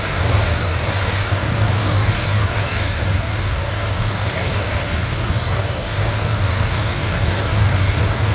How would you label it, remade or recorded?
remade